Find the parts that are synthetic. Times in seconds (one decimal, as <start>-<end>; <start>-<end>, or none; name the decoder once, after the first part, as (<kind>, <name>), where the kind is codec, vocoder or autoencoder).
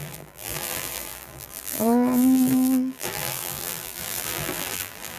0.0-5.2 (vocoder, BigVGAN v2)